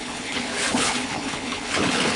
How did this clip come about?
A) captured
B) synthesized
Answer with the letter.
B